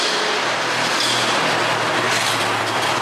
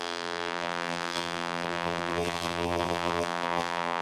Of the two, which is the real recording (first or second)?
first